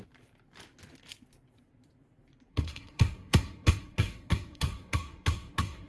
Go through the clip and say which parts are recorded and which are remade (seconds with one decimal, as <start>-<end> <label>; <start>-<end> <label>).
0.0-2.5 recorded; 2.5-5.9 remade